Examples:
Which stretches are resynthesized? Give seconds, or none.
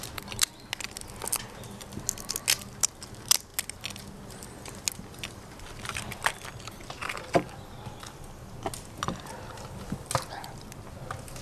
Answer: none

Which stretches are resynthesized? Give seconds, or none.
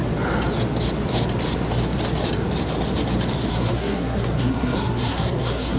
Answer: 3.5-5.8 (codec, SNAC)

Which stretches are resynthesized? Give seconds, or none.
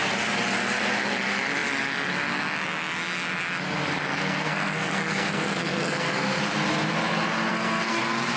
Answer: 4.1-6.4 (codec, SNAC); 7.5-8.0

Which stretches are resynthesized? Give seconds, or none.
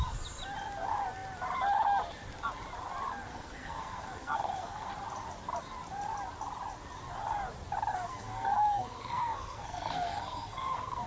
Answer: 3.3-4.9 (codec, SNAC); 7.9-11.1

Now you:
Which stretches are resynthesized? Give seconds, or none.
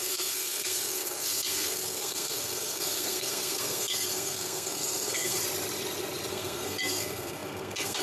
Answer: 0.0-5.4 (codec, SNAC); 6.3-8.0